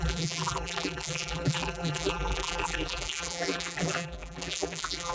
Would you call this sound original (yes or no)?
no